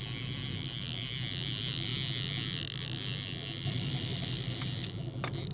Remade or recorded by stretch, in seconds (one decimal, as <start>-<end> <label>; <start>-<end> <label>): 0.0-5.5 recorded

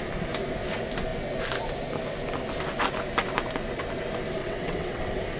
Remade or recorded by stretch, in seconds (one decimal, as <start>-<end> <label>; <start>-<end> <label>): 0.0-4.4 recorded; 4.4-5.0 remade; 5.0-5.4 recorded

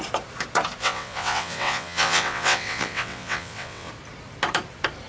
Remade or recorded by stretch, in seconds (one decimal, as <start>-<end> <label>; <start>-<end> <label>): 0.0-0.8 recorded; 0.8-3.9 remade; 3.9-5.1 recorded

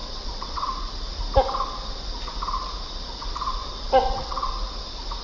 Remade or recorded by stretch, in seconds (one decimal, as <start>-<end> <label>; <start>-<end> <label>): 0.0-0.7 remade; 0.7-3.6 recorded; 3.6-4.5 remade; 4.5-5.2 recorded

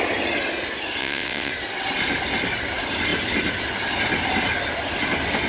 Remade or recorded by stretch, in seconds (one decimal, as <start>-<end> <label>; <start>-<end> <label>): 0.0-1.0 recorded; 1.0-1.5 remade; 1.5-5.5 recorded

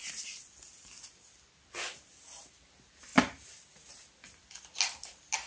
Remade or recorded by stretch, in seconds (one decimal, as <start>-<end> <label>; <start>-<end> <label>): 0.0-5.5 recorded

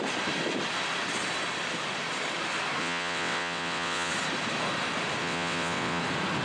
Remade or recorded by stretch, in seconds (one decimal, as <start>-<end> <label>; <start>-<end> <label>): 0.0-2.8 recorded; 2.8-4.1 remade; 4.1-5.2 recorded; 5.2-6.0 remade; 6.0-6.4 recorded

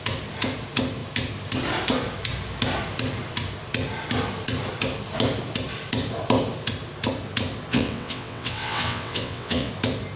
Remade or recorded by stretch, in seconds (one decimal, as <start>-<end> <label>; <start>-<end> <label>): 0.0-7.7 recorded; 7.7-9.7 remade; 9.7-10.2 recorded